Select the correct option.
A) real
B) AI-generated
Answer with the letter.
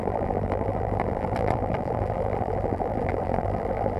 B